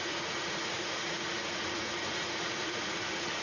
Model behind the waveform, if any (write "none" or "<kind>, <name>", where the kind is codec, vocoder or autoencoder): vocoder, Vocos